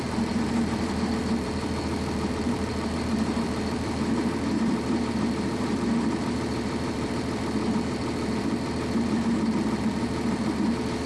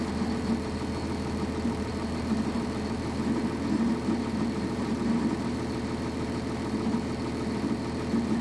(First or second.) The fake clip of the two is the first